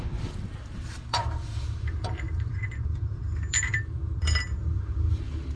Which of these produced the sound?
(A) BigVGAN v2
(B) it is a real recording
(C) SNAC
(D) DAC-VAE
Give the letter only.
A